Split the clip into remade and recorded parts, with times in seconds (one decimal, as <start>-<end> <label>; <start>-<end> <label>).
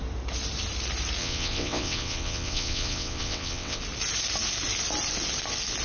0.0-1.2 recorded; 1.2-3.8 remade; 3.8-5.8 recorded